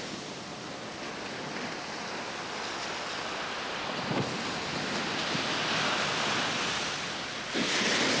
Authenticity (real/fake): real